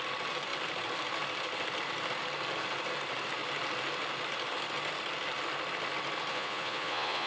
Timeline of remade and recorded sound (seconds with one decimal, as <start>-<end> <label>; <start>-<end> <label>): 0.0-6.3 recorded; 6.3-7.3 remade

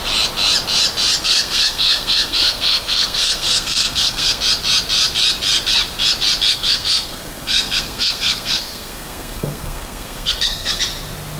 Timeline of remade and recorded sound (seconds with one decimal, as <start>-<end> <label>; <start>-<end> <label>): 0.0-1.2 recorded; 1.2-4.4 remade; 4.4-6.5 recorded; 6.5-10.8 remade; 10.8-11.4 recorded

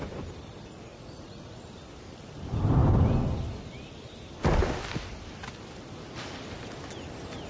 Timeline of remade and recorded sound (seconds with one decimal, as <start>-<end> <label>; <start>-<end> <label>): 0.0-0.9 recorded; 0.9-1.6 remade; 1.6-7.5 recorded

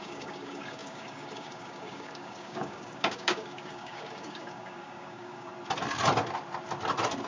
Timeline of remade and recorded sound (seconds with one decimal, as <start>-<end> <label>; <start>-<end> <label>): 0.0-5.5 remade; 5.5-7.3 recorded

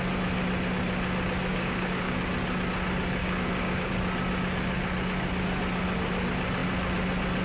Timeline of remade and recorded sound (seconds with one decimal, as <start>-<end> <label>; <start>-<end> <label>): 0.0-1.5 recorded; 1.5-2.2 remade; 2.2-3.2 recorded; 3.2-3.9 remade; 3.9-7.4 recorded